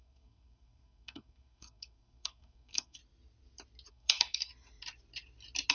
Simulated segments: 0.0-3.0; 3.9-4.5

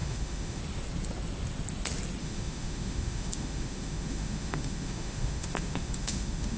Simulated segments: 0.0-0.6; 2.2-6.6

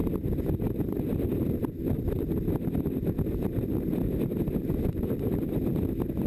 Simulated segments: none

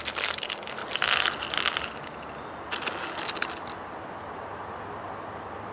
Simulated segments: none

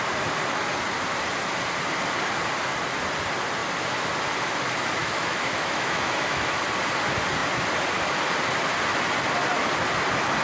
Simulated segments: 5.0-6.6

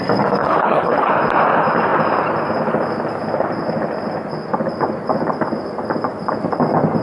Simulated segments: 0.4-1.1